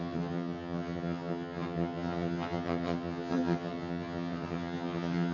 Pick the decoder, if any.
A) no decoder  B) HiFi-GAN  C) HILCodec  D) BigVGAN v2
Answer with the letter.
B